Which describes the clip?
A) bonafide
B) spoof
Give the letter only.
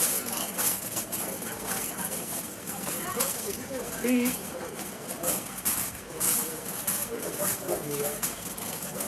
B